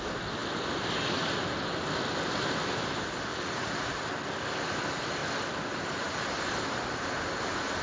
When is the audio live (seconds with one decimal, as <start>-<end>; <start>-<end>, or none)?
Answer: 0.0-3.3; 3.9-7.8